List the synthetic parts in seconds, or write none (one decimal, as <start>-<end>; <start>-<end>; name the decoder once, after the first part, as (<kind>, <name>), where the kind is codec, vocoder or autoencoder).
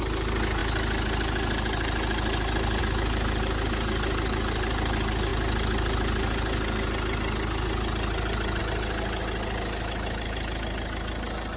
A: none